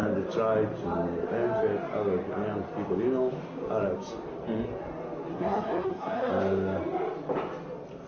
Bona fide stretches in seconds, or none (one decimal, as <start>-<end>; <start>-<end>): 0.0-5.3; 6.3-8.1